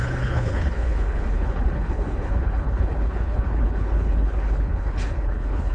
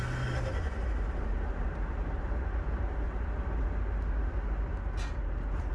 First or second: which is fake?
first